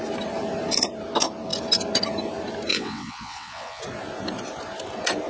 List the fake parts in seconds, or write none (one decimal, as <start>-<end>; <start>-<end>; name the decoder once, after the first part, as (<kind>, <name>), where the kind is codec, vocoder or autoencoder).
2.7-3.8 (vocoder, WaveNeXt)